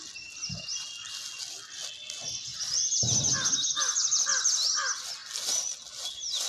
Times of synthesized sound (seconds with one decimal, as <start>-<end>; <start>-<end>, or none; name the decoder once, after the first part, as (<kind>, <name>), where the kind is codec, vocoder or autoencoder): none